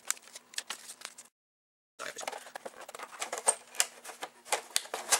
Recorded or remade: recorded